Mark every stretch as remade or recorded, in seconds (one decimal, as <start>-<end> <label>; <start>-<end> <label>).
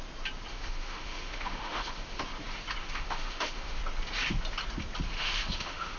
0.0-0.5 recorded; 0.5-2.2 remade; 2.2-2.8 recorded; 2.8-3.8 remade; 3.8-5.1 recorded; 5.1-6.0 remade